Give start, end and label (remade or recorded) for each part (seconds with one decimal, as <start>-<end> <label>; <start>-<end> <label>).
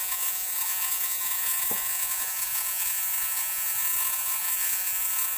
0.0-5.4 remade